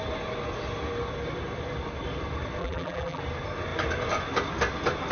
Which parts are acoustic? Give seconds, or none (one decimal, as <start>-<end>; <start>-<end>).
0.0-2.6; 3.2-5.1